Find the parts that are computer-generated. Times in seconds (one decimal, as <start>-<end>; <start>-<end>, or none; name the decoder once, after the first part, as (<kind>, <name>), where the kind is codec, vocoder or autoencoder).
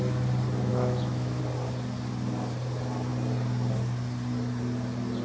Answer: 0.7-1.4 (autoencoder, DAC-VAE)